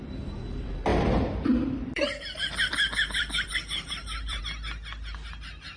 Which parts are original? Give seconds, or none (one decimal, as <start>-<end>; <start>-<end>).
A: 0.0-0.9; 4.4-5.8